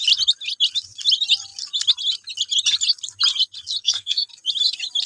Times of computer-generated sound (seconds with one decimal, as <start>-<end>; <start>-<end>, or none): 3.8-4.3